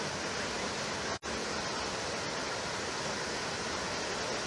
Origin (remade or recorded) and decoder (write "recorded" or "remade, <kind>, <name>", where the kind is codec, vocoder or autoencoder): recorded